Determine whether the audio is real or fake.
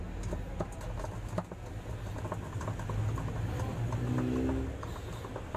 real